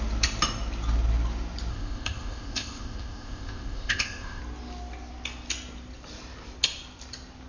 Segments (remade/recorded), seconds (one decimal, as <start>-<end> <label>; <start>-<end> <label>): 0.0-1.7 recorded; 1.7-4.4 remade; 4.4-7.5 recorded